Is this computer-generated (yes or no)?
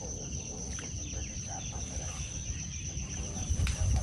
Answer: yes